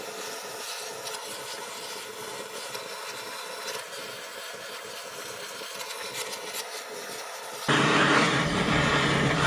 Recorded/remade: recorded